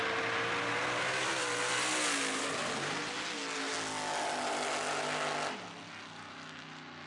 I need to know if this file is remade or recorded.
recorded